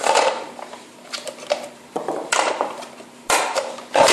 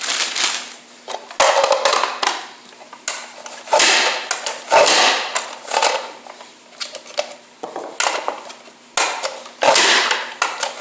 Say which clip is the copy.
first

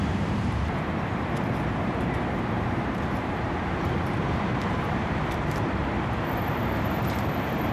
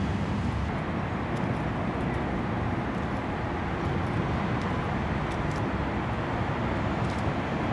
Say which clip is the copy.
first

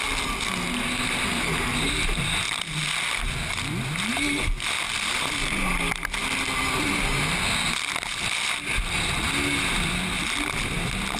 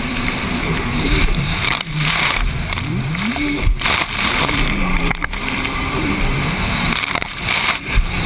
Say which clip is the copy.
second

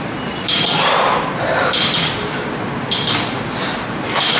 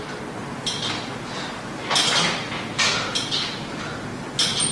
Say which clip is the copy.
first